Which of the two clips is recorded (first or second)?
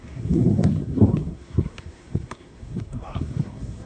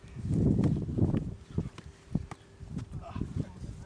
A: second